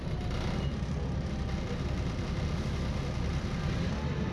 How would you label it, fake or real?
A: real